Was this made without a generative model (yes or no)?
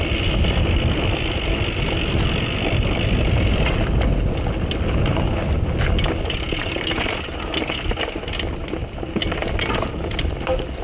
yes